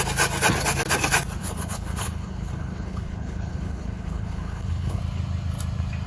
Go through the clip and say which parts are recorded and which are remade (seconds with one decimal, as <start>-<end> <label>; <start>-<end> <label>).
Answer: 0.0-1.4 recorded; 1.4-5.0 remade; 5.0-6.1 recorded